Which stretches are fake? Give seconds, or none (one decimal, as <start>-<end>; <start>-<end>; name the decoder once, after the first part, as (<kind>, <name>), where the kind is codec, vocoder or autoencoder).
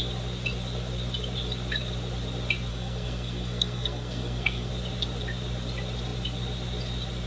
2.7-4.7 (codec, SNAC)